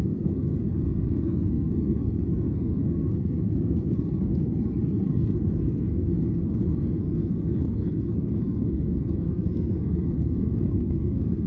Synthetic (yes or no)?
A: yes